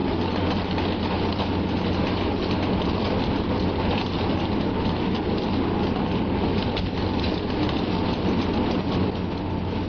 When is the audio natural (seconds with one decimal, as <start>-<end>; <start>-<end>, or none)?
0.0-9.9